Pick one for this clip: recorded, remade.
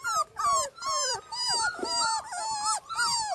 recorded